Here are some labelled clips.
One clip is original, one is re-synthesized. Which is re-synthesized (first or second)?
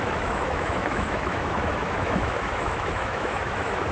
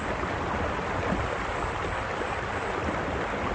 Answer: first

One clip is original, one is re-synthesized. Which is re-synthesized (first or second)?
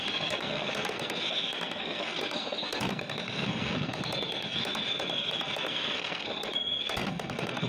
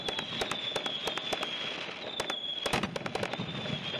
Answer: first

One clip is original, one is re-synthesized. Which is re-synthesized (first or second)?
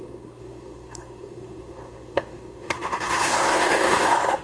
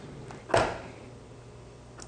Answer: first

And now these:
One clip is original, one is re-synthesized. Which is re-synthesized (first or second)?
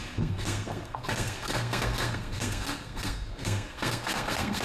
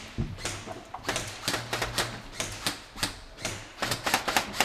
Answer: first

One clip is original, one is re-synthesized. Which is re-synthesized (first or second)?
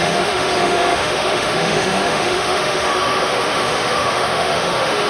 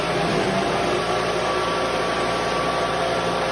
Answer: first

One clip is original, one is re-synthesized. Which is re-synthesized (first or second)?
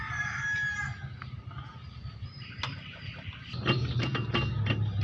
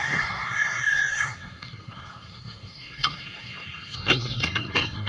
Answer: second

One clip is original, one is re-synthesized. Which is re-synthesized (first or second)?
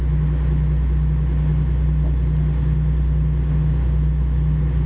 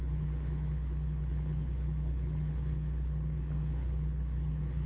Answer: second